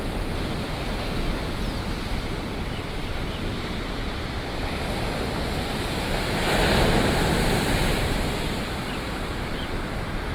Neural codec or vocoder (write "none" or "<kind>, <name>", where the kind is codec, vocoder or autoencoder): none